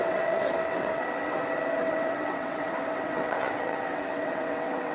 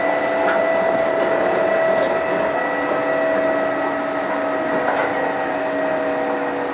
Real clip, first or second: second